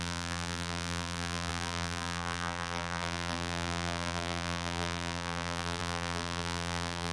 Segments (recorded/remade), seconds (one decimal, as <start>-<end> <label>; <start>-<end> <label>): 0.0-7.1 remade